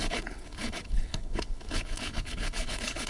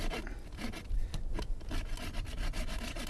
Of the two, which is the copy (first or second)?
first